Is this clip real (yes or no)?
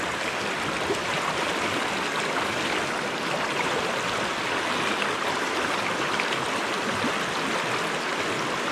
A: yes